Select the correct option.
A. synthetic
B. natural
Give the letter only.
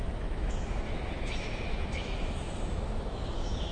A